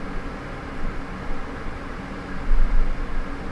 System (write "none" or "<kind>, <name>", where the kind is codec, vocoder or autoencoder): none